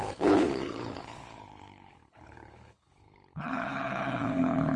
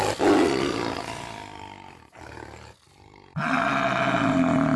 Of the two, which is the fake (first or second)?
first